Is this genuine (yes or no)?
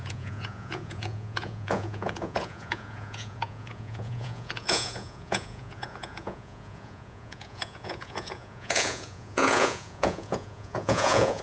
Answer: no